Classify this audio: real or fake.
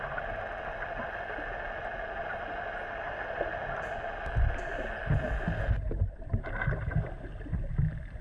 real